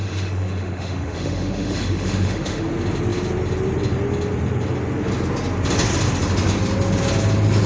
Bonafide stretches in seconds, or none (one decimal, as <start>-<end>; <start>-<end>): 2.7-7.7